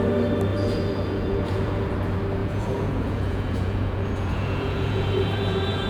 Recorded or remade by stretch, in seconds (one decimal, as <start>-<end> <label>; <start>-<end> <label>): 0.0-0.5 recorded; 0.5-1.9 remade; 1.9-2.4 recorded; 2.4-5.9 remade